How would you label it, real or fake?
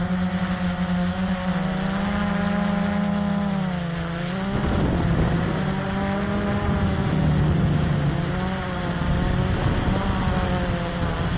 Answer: real